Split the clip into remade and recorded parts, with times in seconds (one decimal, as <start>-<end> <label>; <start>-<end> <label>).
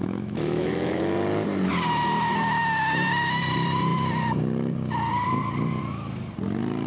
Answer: 0.0-1.0 remade; 1.0-6.9 recorded